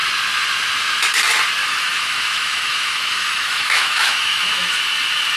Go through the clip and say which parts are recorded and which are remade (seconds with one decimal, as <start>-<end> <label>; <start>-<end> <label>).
0.0-1.6 recorded; 1.6-4.8 remade; 4.8-5.4 recorded